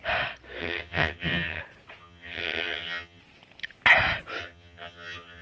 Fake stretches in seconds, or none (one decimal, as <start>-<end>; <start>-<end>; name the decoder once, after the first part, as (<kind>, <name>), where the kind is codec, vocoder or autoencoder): 0.6-1.6 (vocoder, HiFi-GAN); 2.0-3.2; 4.4-5.4